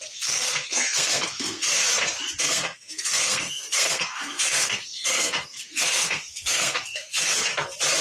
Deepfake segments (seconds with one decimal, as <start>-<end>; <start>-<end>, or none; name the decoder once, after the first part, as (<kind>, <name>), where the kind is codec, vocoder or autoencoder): 0.0-1.8 (codec, SNAC); 2.4-7.5